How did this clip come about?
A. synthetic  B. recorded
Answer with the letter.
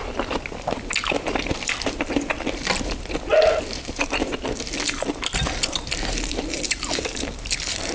A